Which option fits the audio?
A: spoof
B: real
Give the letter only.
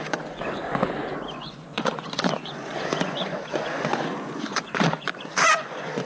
A